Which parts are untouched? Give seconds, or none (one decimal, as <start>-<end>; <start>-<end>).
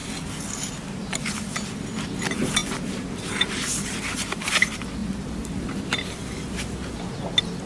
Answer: 0.0-2.6; 4.5-7.7